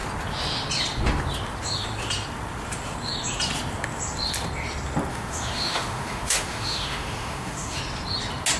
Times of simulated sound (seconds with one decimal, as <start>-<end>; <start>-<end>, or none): 5.1-7.8